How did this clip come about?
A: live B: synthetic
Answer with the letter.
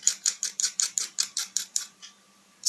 B